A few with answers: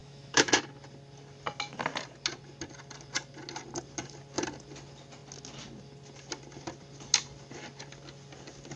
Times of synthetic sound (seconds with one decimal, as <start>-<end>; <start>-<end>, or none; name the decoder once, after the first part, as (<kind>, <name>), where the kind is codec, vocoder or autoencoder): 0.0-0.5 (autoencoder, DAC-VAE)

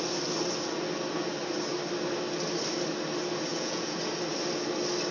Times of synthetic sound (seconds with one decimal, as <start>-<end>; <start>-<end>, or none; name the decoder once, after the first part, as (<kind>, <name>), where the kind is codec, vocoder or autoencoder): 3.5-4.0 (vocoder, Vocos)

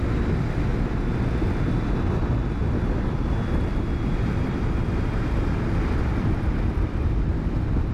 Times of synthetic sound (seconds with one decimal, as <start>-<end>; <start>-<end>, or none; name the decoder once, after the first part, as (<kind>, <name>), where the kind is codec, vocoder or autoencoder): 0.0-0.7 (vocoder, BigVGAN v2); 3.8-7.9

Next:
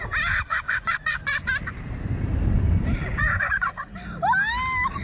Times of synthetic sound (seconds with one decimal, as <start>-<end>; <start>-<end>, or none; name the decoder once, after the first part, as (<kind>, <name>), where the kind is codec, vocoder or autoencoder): 0.5-1.5 (vocoder, Vocos); 3.0-3.9

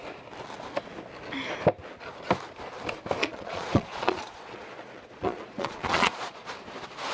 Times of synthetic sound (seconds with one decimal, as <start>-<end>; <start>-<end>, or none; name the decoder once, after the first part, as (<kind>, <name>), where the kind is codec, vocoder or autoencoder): 3.2-6.5 (vocoder, Vocos)

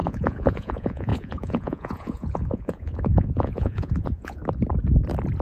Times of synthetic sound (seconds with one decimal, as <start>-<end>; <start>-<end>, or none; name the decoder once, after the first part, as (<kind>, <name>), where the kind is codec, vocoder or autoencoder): 0.0-4.4 (vocoder, Vocos)

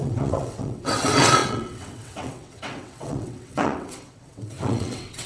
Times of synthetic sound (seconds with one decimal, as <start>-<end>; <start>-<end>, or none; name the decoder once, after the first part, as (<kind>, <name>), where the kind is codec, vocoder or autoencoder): 0.0-5.3 (vocoder, WaveNeXt)